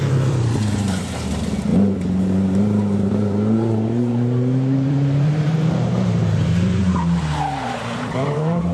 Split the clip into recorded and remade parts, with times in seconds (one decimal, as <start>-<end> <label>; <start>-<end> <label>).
0.0-8.7 remade